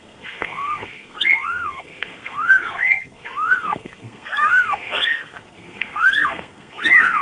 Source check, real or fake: fake